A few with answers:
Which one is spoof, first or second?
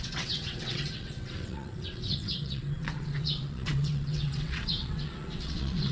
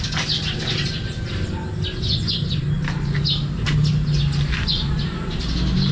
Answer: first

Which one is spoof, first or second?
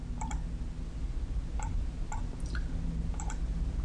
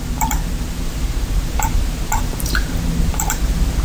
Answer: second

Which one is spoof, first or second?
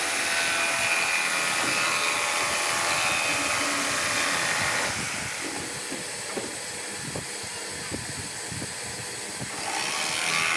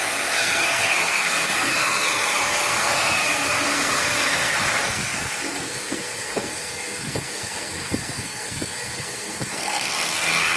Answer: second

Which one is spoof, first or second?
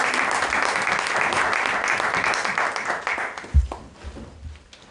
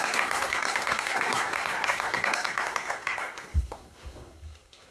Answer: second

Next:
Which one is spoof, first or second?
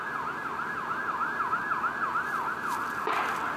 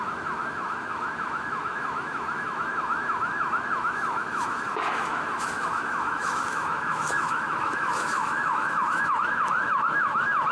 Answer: second